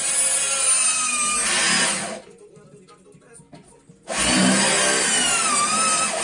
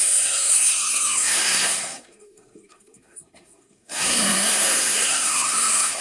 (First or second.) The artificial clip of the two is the second